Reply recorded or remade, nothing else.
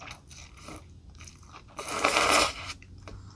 recorded